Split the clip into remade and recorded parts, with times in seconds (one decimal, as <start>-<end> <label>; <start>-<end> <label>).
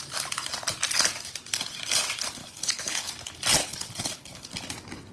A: 0.0-2.4 recorded; 2.4-3.1 remade; 3.1-3.6 recorded; 3.6-4.5 remade; 4.5-5.1 recorded